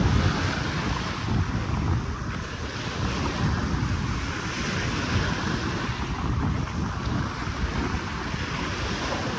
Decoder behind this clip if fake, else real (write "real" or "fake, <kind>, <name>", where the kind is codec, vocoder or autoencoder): real